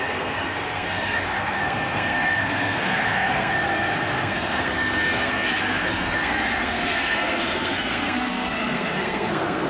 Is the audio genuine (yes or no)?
no